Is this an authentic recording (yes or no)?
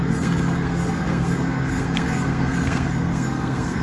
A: no